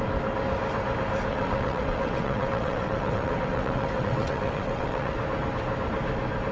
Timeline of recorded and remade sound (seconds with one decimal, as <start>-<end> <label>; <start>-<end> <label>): 0.0-1.3 recorded; 1.3-5.2 remade; 5.2-6.5 recorded